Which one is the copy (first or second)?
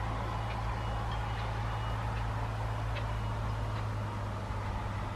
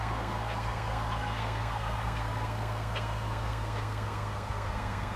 second